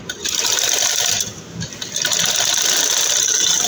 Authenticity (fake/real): real